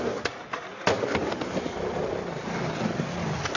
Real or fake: real